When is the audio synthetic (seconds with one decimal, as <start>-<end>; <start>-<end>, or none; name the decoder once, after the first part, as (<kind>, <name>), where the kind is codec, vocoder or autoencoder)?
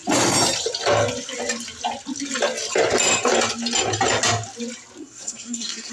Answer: 5.0-5.9 (codec, SNAC)